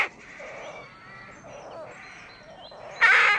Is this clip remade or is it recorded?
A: recorded